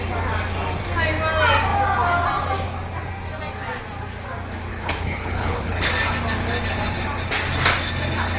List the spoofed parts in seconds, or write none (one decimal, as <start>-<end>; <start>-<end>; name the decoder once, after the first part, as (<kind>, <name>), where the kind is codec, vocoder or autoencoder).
4.7-5.9 (codec, HILCodec)

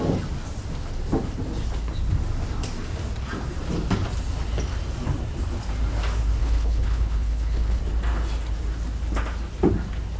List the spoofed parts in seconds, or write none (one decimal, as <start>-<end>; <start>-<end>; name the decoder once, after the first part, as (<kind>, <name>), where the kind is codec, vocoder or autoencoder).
6.4-7.8 (codec, HILCodec)